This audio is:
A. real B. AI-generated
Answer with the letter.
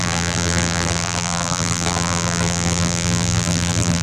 B